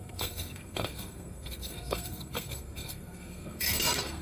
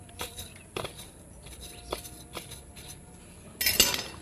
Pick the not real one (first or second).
first